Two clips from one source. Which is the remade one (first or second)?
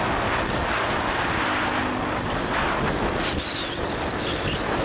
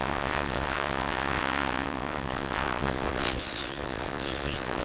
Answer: second